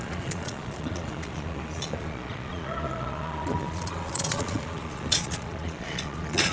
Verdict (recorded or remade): remade